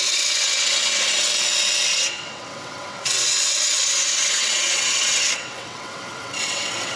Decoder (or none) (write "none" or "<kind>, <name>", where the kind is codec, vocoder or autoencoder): vocoder, WaveNeXt